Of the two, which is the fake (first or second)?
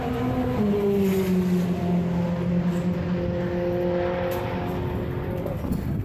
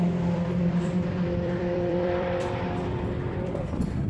second